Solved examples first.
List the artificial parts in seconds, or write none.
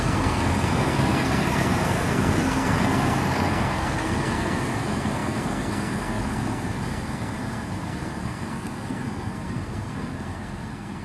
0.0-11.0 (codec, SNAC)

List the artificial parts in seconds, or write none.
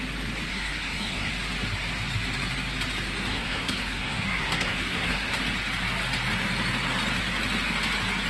0.5-1.3 (codec, SNAC); 3.3-5.4